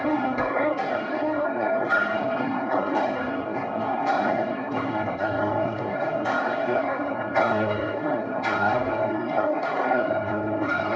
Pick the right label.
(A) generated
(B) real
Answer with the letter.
A